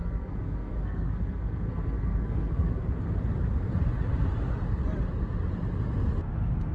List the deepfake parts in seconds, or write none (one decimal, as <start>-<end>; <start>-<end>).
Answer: 0.0-2.9